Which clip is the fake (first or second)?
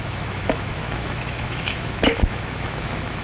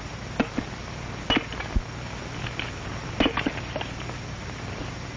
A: first